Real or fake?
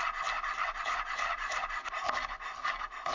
real